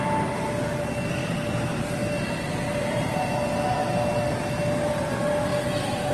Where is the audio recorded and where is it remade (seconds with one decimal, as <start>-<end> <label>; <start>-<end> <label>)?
0.0-6.1 recorded